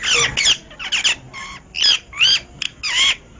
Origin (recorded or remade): recorded